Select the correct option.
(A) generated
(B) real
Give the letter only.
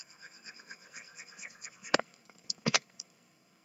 A